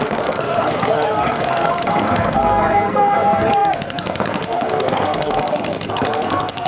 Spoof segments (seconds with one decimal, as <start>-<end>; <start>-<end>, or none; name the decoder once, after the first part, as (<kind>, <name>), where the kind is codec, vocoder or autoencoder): 0.0-6.7 (codec, SNAC)